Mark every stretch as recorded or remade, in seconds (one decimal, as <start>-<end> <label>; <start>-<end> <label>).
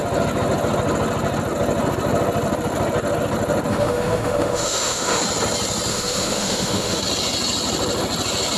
0.0-3.7 recorded; 3.7-5.2 remade; 5.2-5.9 recorded; 5.9-7.0 remade; 7.0-8.6 recorded